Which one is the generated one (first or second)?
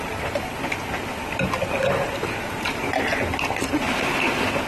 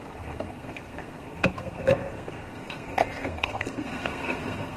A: second